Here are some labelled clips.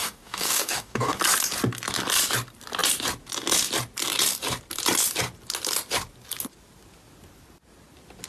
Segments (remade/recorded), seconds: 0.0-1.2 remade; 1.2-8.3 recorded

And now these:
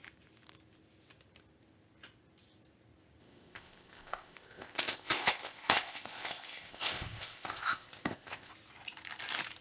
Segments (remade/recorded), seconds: 0.0-3.2 recorded; 3.2-8.5 remade; 8.5-9.6 recorded

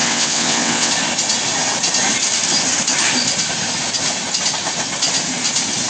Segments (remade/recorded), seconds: 0.0-0.9 remade; 0.9-5.9 recorded

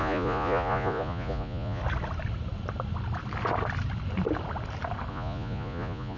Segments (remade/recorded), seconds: 0.0-1.8 remade; 1.8-5.1 recorded; 5.1-6.2 remade

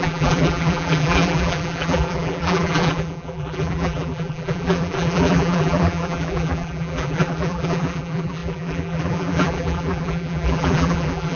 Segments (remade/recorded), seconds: 0.0-11.4 remade

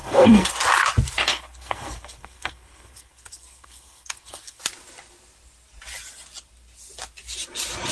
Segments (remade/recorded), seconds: 0.0-0.5 remade; 0.5-1.3 recorded; 1.3-4.6 remade; 4.6-7.9 recorded